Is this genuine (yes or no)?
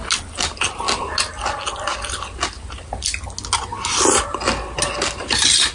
yes